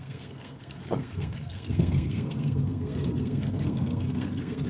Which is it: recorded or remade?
remade